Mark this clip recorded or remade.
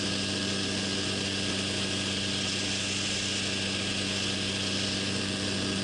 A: recorded